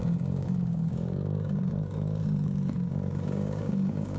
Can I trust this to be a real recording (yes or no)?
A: no